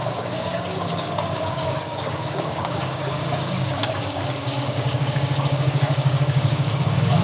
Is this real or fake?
fake